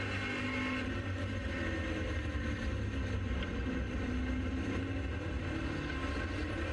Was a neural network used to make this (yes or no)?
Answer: no